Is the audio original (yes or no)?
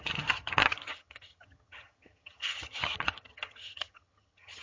no